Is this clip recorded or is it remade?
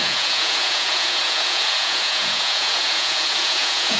remade